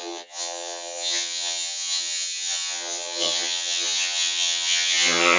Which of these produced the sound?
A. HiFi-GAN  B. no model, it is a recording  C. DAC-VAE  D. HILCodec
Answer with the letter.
A